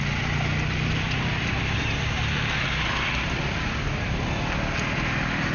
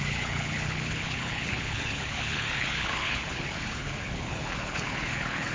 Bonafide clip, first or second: first